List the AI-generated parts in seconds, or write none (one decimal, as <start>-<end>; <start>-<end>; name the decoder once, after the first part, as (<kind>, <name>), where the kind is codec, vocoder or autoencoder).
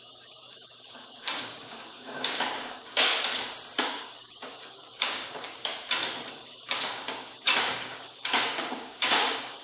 0.0-3.1 (codec, DAC); 3.8-5.7; 6.3-9.6